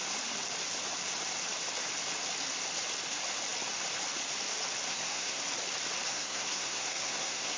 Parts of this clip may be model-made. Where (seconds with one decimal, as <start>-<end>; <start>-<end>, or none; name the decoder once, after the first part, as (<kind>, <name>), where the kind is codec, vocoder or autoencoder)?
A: 4.9-5.4 (codec, SNAC); 6.1-7.6

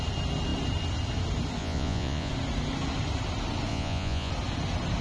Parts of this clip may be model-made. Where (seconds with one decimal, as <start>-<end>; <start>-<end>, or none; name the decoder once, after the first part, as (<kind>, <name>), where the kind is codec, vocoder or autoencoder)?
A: 1.6-2.3 (vocoder, Vocos); 3.7-4.3

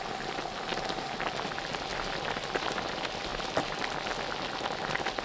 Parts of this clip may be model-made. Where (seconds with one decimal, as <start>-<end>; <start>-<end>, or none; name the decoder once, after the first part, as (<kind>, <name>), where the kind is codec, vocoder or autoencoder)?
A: none

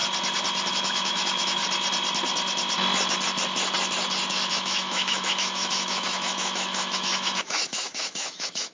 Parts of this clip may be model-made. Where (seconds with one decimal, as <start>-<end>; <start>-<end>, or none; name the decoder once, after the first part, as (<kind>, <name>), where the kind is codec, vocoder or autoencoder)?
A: 0.7-1.6 (autoencoder, DAC-VAE); 4.5-8.7

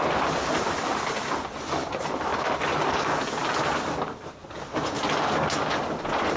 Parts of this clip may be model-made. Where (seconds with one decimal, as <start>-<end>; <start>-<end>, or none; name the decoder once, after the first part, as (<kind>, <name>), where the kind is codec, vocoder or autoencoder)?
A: none

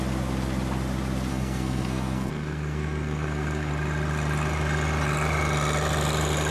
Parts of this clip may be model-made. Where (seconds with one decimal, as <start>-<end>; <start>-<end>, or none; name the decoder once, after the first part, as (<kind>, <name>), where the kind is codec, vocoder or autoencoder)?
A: 1.3-3.7 (codec, SNAC)